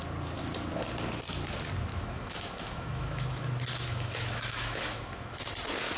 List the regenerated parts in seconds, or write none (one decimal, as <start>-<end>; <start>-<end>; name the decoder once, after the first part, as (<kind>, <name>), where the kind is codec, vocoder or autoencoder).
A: 1.9-5.5 (autoencoder, DAC-VAE)